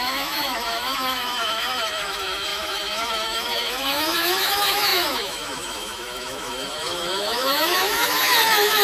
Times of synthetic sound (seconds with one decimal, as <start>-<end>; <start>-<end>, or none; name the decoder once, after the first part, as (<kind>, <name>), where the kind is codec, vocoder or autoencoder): 0.0-8.8 (autoencoder, DAC-VAE)